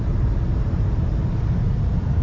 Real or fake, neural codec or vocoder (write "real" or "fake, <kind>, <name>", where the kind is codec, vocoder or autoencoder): real